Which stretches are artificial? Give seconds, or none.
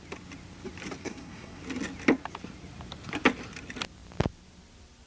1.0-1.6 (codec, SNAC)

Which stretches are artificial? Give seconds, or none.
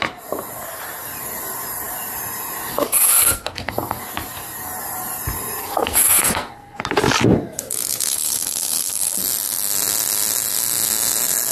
2.7-4.0 (codec, SNAC); 5.6-6.8; 8.1-9.2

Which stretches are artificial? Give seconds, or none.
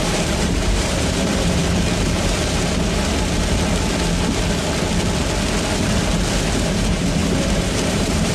0.0-1.6 (vocoder, BigVGAN v2); 6.6-8.3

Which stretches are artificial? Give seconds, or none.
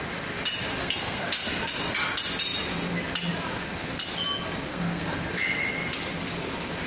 0.8-1.5 (codec, SNAC); 4.7-5.3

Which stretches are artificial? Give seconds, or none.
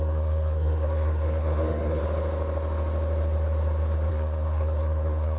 0.0-2.0 (codec, SNAC); 4.1-5.4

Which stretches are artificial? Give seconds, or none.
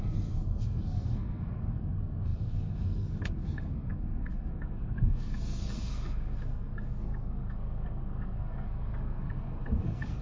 0.0-10.2 (codec, SNAC)